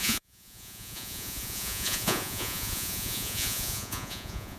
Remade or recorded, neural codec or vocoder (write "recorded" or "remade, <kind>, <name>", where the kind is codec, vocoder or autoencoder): remade, vocoder, Vocos